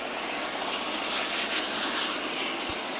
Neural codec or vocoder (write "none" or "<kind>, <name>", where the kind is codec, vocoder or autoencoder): none